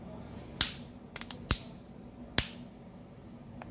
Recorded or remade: recorded